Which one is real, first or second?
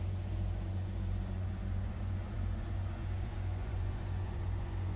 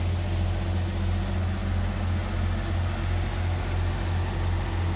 second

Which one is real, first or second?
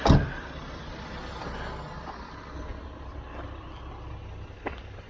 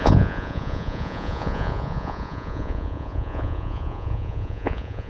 first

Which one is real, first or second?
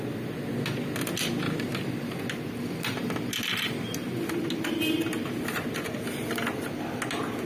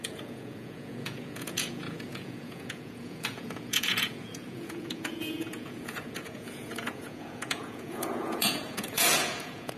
first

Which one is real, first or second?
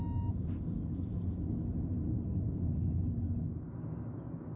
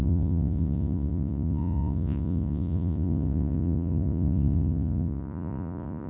first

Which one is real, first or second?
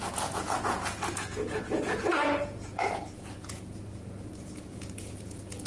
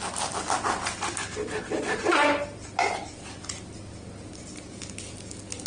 second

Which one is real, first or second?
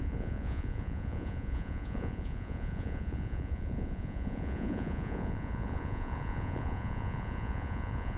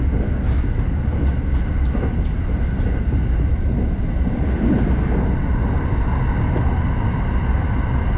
second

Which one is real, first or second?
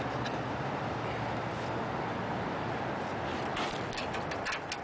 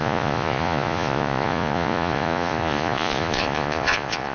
first